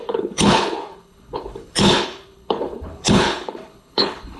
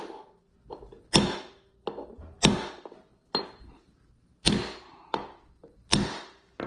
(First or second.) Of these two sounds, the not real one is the first